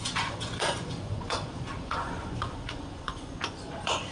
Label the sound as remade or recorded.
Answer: remade